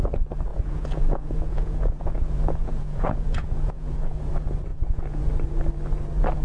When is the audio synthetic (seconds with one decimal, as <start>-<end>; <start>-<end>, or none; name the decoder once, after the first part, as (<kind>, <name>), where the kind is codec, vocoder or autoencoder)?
0.5-4.3 (vocoder, Vocos); 4.7-5.2